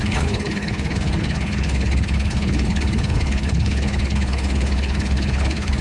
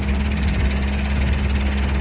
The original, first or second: second